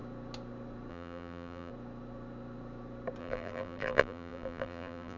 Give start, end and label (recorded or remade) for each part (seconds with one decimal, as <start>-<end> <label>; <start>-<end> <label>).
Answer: 0.0-0.9 recorded; 0.9-1.7 remade; 1.7-3.2 recorded; 3.2-5.2 remade